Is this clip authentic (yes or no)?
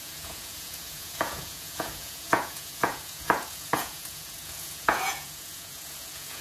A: no